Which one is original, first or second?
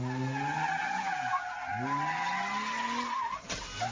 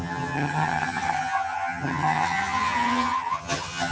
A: first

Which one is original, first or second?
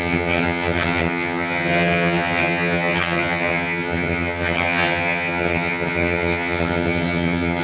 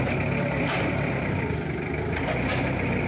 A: second